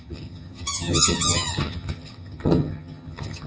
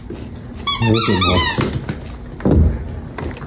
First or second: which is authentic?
second